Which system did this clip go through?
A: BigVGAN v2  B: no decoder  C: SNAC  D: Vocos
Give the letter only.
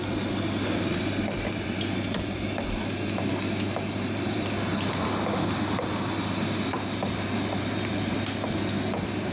A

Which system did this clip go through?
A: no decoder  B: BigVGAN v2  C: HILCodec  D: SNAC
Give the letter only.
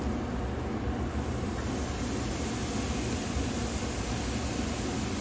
A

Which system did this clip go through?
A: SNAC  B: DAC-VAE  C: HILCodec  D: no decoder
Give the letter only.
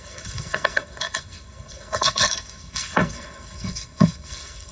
A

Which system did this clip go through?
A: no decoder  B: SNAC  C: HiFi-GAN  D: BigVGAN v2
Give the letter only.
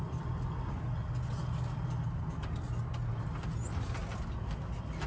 A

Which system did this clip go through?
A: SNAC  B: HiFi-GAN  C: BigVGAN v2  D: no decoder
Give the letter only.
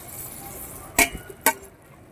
D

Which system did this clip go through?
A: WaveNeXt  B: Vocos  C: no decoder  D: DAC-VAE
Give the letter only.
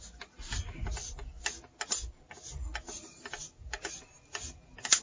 C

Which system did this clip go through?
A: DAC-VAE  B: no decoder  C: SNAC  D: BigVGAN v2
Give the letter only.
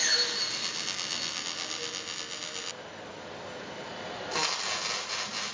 B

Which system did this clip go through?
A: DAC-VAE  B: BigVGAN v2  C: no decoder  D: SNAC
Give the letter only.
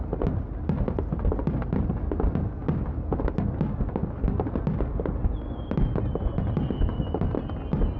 C